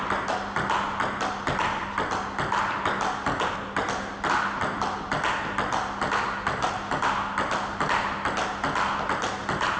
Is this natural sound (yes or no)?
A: yes